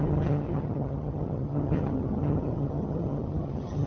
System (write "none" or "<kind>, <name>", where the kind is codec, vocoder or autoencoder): vocoder, HiFi-GAN